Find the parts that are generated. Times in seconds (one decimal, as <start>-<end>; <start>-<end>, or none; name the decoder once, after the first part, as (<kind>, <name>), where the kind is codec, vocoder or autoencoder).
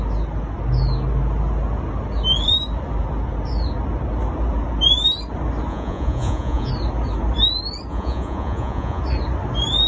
5.7-6.7 (vocoder, Vocos); 7.9-9.0